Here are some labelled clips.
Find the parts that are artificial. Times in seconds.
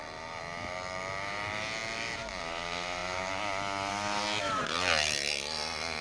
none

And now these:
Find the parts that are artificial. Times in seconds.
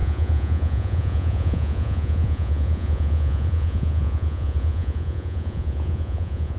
0.0-6.6 (vocoder, Vocos)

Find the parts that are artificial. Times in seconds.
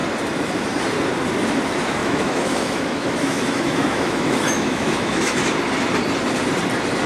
2.0-5.4 (autoencoder, DAC-VAE)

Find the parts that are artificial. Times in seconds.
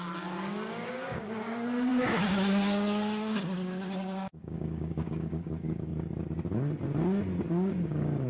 0.0-5.9 (codec, DAC); 7.5-8.3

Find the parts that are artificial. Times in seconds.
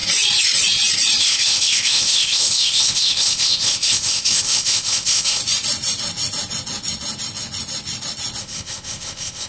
1.2-5.4 (codec, ZipCodec); 8.4-9.5